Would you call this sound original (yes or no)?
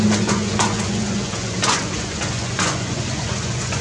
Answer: no